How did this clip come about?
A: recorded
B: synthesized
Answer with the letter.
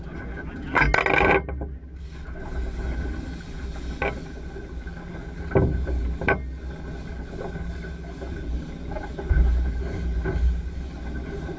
A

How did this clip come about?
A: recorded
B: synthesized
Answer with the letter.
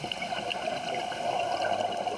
A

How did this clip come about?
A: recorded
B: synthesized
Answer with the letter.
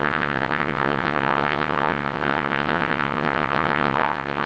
B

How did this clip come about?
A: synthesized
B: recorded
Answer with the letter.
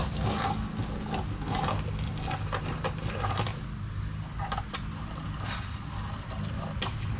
B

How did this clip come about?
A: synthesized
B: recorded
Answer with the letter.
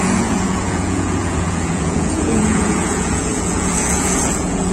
A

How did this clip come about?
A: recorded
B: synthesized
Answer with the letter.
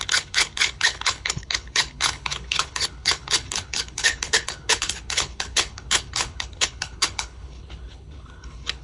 B